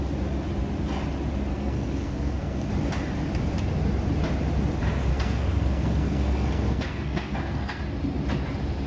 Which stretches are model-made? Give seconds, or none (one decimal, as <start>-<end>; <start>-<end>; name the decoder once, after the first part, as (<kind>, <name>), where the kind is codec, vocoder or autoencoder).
1.5-2.7 (codec, SNAC); 5.1-7.8

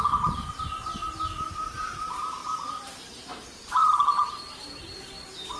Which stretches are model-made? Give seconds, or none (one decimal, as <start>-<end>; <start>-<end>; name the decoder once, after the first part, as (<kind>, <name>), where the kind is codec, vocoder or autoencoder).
none